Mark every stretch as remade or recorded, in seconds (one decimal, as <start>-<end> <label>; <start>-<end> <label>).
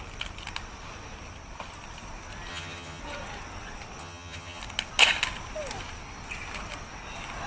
0.0-2.5 recorded; 2.5-3.0 remade; 3.0-4.0 recorded; 4.0-4.6 remade; 4.6-7.5 recorded